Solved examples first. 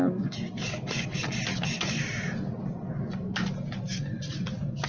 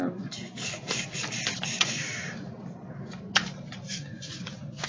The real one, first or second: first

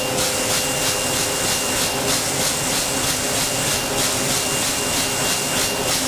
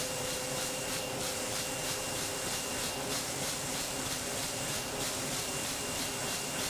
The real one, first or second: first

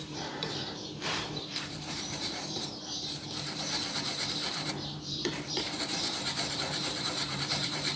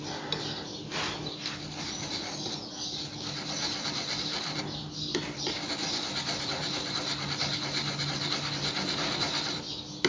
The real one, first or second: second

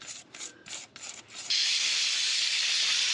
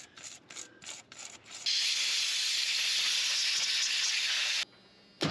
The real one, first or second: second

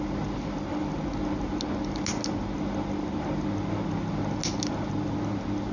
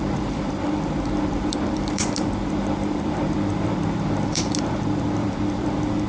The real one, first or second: first